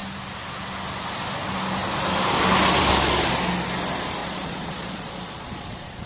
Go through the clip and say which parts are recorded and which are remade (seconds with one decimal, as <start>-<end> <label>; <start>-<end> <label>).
0.0-4.2 recorded; 4.2-6.1 remade